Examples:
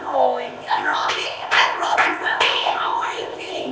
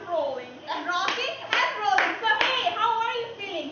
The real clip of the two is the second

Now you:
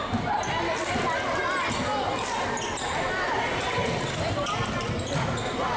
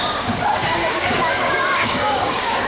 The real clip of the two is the first